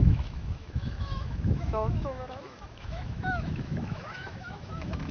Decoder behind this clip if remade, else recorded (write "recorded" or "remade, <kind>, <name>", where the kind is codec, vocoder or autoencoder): remade, autoencoder, DAC-VAE